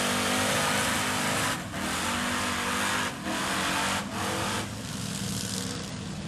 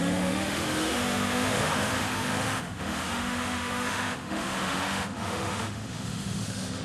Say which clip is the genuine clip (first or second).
first